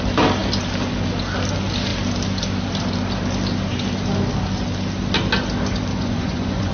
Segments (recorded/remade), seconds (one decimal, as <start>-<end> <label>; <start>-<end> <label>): 0.0-5.9 recorded; 5.9-6.7 remade